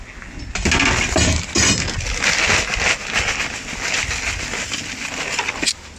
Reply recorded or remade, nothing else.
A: recorded